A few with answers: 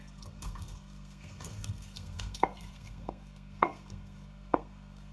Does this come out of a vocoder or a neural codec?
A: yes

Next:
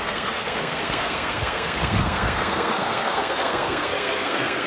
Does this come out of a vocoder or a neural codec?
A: yes